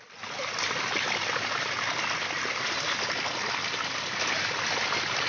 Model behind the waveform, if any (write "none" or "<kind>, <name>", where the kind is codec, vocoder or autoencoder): none